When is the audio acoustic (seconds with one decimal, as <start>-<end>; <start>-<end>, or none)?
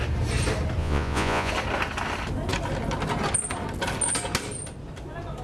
0.0-0.8; 1.5-5.4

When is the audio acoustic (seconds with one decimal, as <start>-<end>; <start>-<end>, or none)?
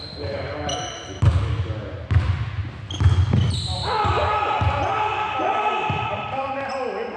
0.0-2.6; 3.5-5.1; 6.7-7.2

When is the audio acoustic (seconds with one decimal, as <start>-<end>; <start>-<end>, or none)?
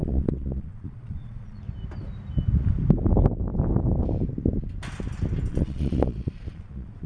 1.6-5.5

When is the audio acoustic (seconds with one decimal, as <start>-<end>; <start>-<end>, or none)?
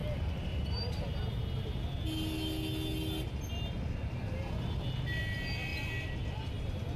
0.0-7.0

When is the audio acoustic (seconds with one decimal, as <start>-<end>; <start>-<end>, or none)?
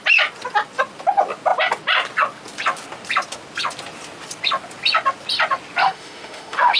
0.0-5.8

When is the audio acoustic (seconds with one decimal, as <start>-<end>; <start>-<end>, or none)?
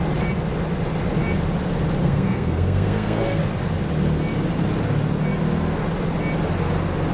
0.0-2.0; 3.4-7.1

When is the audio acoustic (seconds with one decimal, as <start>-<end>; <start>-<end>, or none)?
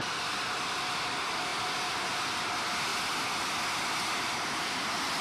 0.0-5.2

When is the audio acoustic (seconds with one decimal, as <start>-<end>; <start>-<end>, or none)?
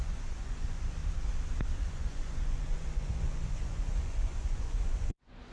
1.0-1.7